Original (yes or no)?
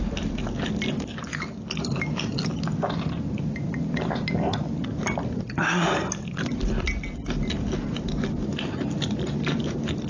yes